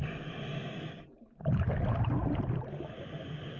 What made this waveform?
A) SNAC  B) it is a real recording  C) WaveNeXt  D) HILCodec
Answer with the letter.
B